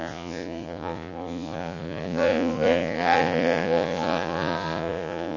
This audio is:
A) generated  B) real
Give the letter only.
A